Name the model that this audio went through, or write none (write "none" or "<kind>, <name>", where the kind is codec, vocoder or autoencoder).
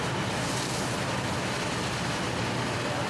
none